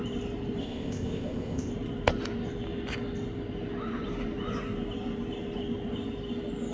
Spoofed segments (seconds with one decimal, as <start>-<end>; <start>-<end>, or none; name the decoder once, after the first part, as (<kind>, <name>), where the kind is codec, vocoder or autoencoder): 0.6-1.7 (codec, ZipCodec)